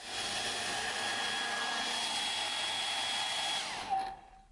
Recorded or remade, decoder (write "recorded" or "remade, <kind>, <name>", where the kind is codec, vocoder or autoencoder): recorded